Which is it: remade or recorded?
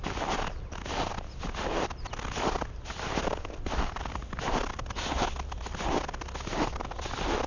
recorded